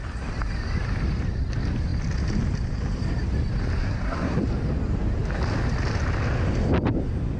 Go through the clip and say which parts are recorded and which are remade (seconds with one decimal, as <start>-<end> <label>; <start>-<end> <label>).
0.0-3.8 recorded; 3.8-4.4 remade; 4.4-7.4 recorded